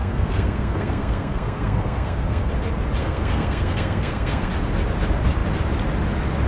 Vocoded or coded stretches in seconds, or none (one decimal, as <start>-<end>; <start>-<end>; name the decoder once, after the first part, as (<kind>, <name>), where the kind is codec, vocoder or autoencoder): 0.0-2.5 (codec, SNAC); 3.0-4.5